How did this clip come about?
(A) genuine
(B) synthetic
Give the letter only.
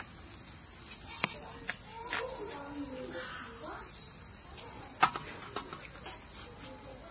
A